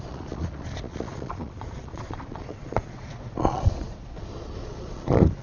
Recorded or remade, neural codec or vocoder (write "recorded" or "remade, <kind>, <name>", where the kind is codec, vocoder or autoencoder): remade, vocoder, Vocos